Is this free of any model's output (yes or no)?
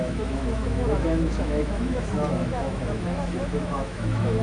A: no